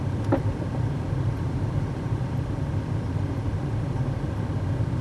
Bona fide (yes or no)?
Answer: no